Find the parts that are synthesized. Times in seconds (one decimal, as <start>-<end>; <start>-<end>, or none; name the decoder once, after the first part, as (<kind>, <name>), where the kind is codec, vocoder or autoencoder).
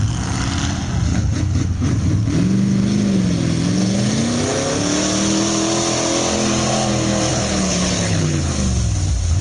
1.1-1.9 (codec, HILCodec); 7.3-8.5